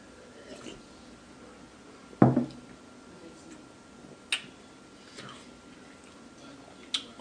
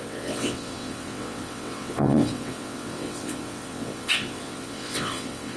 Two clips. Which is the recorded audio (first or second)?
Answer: first